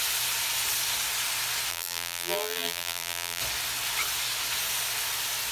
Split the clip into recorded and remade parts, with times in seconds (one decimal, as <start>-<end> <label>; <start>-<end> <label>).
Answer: 0.0-1.7 recorded; 1.7-3.4 remade; 3.4-5.5 recorded